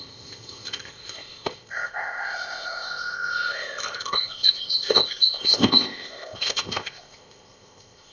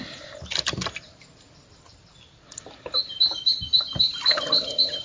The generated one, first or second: first